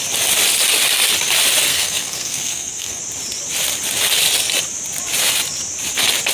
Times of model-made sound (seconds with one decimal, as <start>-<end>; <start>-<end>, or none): 1.7-3.0